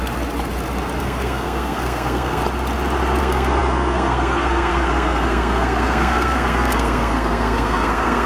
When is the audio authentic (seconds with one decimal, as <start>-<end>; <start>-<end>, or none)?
0.0-1.0; 2.4-3.2